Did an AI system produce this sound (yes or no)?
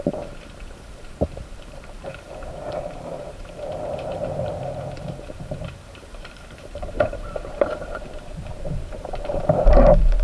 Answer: yes